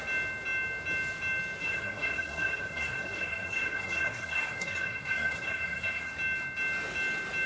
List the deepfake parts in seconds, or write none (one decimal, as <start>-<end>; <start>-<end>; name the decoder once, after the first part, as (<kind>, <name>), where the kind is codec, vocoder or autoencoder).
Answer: 1.6-6.1 (codec, SNAC)